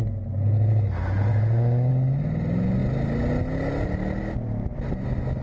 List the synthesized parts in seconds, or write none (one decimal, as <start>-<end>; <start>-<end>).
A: 1.3-1.9